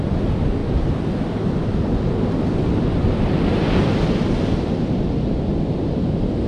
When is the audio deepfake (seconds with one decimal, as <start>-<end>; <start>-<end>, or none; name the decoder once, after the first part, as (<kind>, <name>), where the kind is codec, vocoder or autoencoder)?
none